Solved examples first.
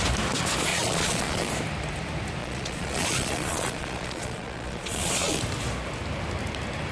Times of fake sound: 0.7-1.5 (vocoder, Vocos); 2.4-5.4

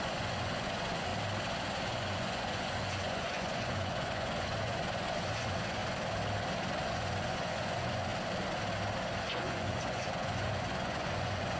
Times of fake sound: 0.0-1.1 (vocoder, Vocos); 1.8-5.8; 6.9-8.1; 9.2-11.6

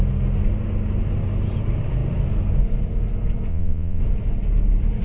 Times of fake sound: 3.5-4.0 (vocoder, Vocos)

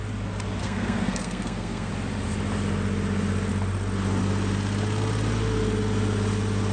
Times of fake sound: 0.6-1.9 (codec, SNAC)

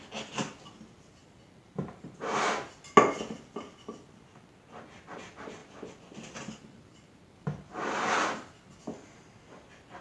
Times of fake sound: none

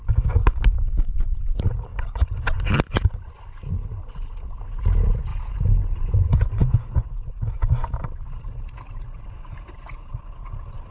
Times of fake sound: 5.3-7.3 (vocoder, Vocos)

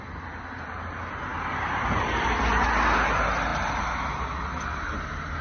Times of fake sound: none

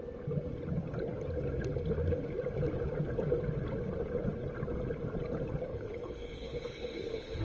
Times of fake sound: 5.7-7.4 (codec, HILCodec)